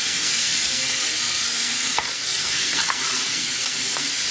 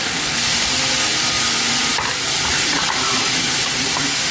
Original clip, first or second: second